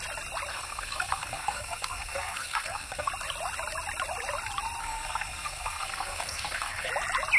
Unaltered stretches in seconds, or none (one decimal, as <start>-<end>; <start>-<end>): 0.0-0.5; 3.1-4.8; 6.9-7.4